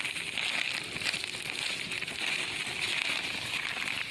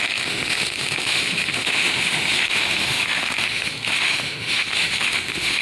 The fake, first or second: second